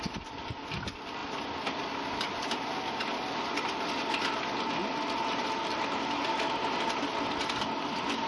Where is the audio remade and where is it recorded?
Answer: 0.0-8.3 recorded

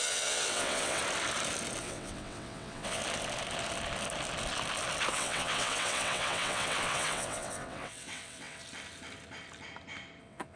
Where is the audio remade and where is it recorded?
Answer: 0.0-1.0 remade; 1.0-1.8 recorded; 1.8-3.0 remade; 3.0-5.1 recorded; 5.1-8.6 remade; 8.6-10.2 recorded; 10.2-10.6 remade

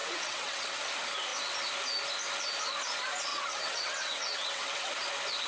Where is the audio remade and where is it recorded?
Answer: 0.0-0.8 remade; 0.8-3.3 recorded; 3.3-4.9 remade; 4.9-5.5 recorded

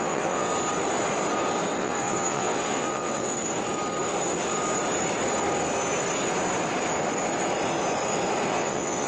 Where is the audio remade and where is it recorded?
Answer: 0.0-0.5 remade; 0.5-1.8 recorded; 1.8-3.4 remade; 3.4-8.5 recorded; 8.5-9.1 remade